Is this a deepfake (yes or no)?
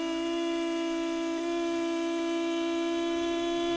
no